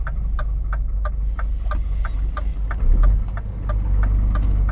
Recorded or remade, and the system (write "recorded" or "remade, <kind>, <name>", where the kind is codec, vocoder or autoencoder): recorded